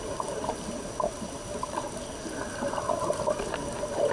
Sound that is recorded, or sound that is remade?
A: recorded